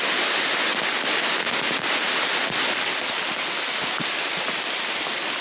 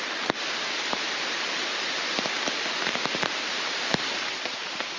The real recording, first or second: first